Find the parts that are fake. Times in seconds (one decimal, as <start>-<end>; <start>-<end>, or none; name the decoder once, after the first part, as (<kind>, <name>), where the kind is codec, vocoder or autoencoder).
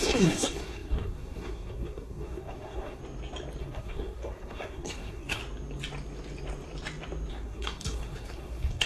0.0-3.0 (codec, SNAC); 3.6-5.4; 7.3-8.9